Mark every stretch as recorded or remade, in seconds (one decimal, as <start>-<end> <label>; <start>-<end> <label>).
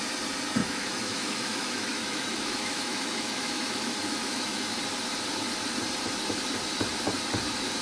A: 0.0-0.6 recorded; 0.6-4.8 remade; 4.8-7.8 recorded